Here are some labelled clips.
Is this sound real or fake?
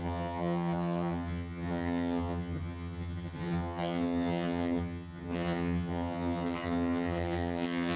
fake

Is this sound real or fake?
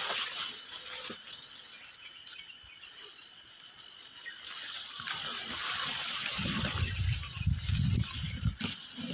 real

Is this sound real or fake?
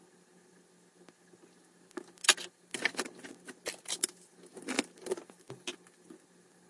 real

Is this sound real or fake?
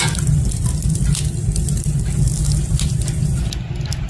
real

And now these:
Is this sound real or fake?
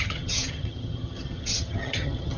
fake